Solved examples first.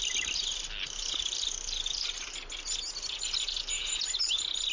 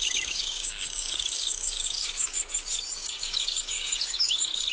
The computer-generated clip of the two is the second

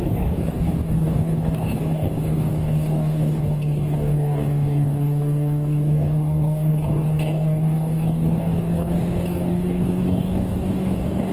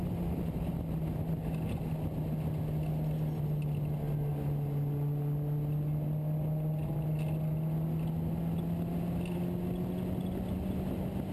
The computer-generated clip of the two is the first